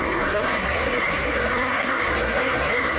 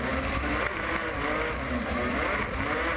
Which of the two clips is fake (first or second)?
first